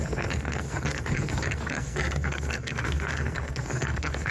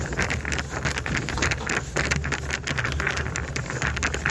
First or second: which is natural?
second